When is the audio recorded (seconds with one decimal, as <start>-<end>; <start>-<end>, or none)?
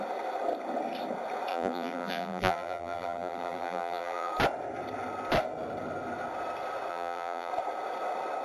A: 0.0-1.5; 4.3-6.9; 7.5-8.4